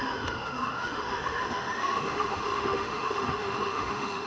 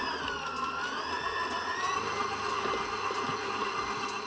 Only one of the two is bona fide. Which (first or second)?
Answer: second